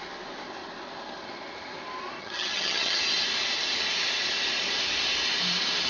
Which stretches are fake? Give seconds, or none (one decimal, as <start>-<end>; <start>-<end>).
2.2-3.0